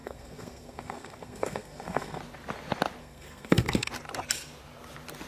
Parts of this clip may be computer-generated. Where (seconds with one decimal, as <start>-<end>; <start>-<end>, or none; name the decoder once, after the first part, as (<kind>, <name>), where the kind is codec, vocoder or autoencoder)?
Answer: 0.0-2.2 (codec, SNAC); 3.0-3.9